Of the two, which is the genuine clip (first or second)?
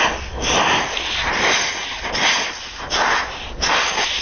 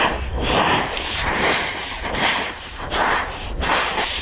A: first